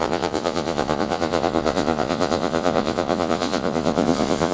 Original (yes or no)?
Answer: no